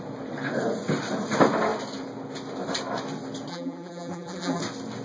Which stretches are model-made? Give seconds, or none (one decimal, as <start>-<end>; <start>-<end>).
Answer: 3.5-4.6